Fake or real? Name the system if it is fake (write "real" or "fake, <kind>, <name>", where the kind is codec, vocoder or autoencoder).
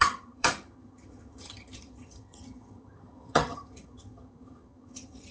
fake, vocoder, HiFi-GAN